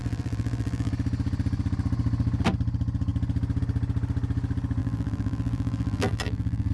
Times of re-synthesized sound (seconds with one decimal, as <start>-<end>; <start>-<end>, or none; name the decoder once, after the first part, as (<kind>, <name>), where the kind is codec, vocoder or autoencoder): 0.0-0.9 (vocoder, BigVGAN v2); 4.8-6.7